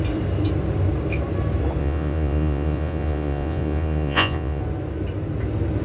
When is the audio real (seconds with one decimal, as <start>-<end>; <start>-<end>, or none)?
0.0-1.8; 4.6-5.8